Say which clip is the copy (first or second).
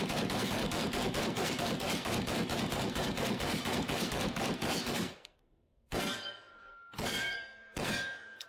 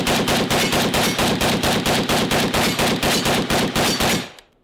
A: first